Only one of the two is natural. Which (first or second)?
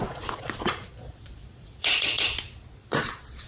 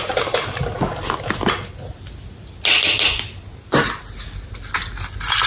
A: second